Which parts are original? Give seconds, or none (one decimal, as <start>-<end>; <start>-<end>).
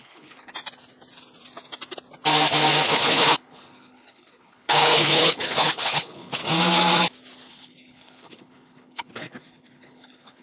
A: 0.5-2.9; 6.4-7.5